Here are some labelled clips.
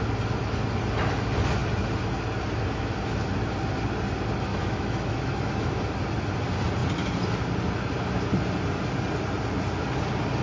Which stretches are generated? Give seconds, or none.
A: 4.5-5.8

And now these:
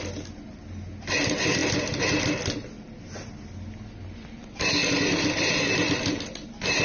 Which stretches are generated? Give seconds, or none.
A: none